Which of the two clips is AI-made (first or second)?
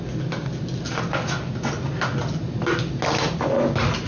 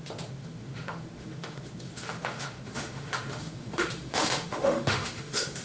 second